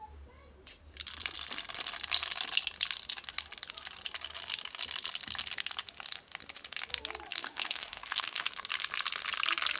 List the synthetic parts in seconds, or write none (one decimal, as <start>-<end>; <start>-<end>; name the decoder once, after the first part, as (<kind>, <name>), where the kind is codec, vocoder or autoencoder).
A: 7.4-8.5 (autoencoder, DAC-VAE)